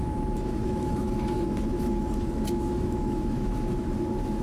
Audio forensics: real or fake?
fake